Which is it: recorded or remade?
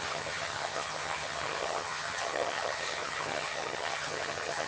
remade